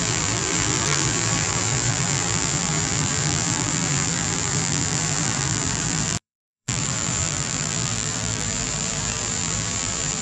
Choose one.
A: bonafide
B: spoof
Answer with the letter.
B